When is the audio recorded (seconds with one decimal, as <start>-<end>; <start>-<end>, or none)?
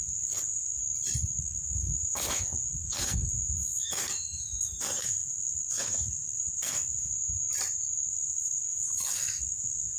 0.8-1.4; 7.1-8.1